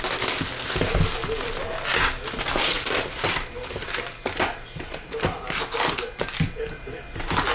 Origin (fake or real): real